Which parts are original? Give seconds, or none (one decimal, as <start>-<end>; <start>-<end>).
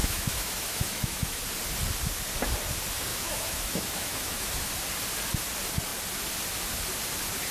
1.4-3.1; 4.7-7.5